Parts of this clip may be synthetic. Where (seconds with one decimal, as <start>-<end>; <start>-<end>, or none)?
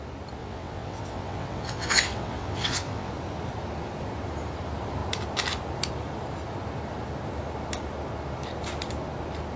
0.4-3.1